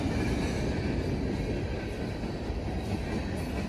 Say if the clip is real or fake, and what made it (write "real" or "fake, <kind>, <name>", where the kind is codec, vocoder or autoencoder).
real